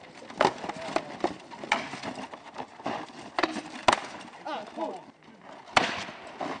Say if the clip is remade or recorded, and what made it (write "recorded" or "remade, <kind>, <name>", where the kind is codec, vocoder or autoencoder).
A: recorded